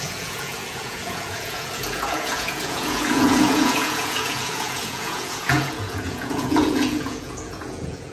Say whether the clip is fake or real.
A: fake